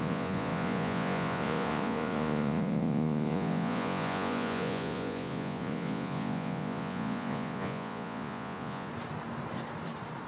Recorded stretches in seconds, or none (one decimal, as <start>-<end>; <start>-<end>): 8.9-10.3